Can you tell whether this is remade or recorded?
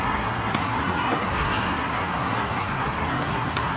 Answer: remade